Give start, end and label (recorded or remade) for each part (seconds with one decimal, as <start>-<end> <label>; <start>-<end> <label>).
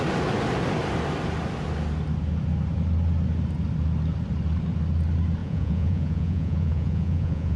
0.0-5.4 recorded; 5.4-7.6 remade